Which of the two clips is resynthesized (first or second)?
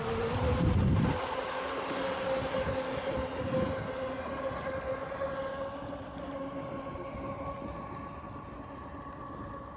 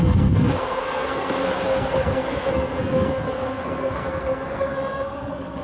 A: second